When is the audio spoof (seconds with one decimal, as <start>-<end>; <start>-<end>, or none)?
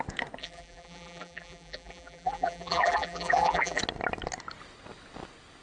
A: 0.4-3.8